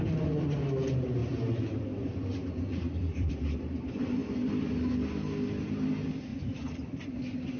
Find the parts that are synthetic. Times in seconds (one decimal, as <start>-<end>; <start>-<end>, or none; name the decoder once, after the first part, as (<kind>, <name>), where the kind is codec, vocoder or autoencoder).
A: 1.2-3.3 (vocoder, BigVGAN v2); 6.3-7.1